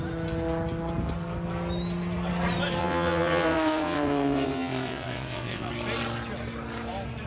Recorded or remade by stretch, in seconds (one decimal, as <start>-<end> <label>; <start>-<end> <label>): 0.0-2.8 recorded; 2.8-5.7 remade; 5.7-7.3 recorded